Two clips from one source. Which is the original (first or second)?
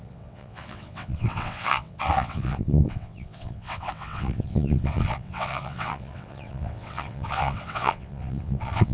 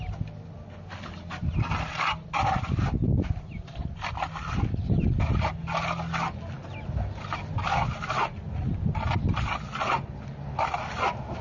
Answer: second